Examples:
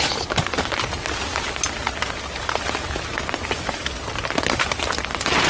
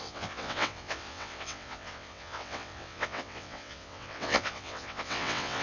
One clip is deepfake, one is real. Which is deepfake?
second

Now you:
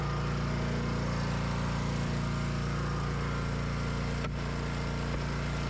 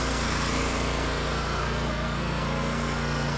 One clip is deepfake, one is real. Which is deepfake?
second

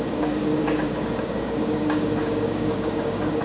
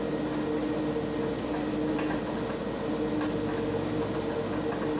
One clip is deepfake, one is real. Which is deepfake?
first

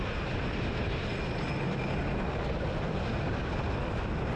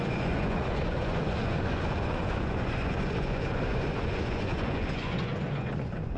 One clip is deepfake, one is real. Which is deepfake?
second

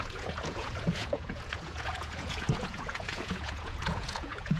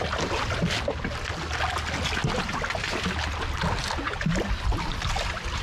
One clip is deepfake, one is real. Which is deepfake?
first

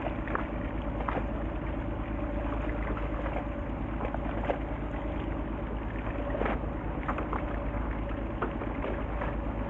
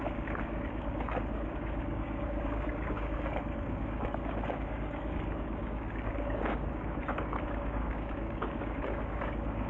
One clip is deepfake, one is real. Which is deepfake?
second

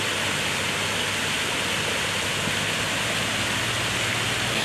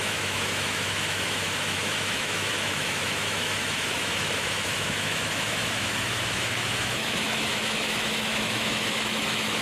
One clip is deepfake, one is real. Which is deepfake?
second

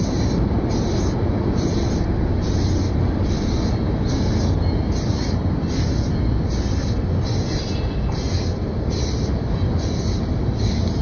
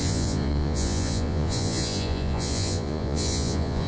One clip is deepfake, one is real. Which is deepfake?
second